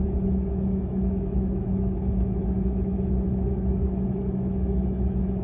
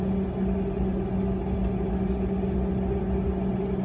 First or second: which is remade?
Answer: first